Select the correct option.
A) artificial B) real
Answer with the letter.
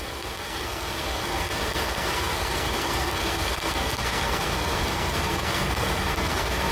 A